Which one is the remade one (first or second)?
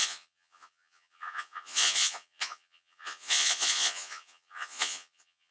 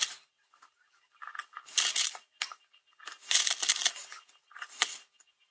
first